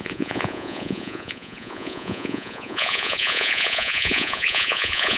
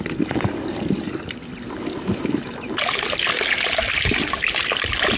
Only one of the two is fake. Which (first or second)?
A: first